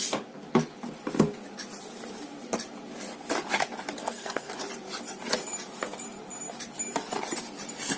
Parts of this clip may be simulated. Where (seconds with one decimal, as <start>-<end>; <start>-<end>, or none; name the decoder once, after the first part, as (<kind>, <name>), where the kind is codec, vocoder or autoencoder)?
4.0-4.5 (codec, SNAC)